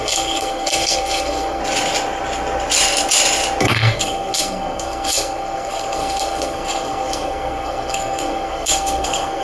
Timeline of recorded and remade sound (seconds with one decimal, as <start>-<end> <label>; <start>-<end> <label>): 0.0-1.6 remade; 1.6-3.6 recorded; 3.6-9.4 remade